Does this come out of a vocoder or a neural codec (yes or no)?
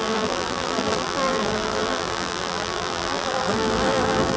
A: yes